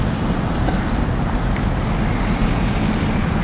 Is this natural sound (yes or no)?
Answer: yes